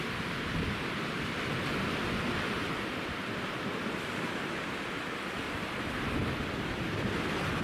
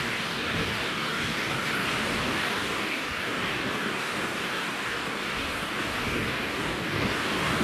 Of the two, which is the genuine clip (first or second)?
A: first